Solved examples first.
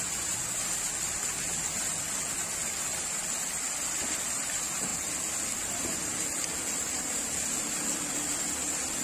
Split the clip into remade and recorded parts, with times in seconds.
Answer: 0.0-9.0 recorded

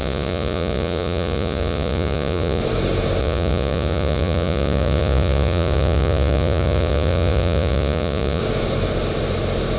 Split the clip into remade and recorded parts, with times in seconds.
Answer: 0.0-2.6 remade; 2.6-3.2 recorded; 3.2-8.4 remade; 8.4-9.8 recorded

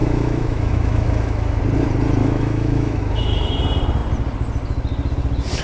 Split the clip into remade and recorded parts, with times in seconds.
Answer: 0.0-1.6 remade; 1.6-2.2 recorded; 2.2-3.6 remade; 3.6-5.6 recorded

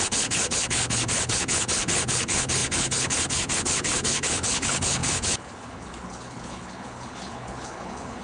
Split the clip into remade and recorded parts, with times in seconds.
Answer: 0.0-8.2 remade

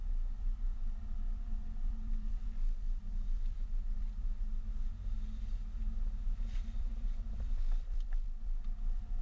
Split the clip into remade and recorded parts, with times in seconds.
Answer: 0.0-4.2 remade; 4.2-6.2 recorded; 6.2-9.2 remade

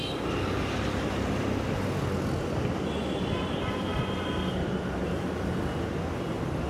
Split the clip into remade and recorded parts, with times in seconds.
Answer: 0.0-6.7 recorded